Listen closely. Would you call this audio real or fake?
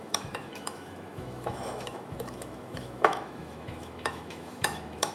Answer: fake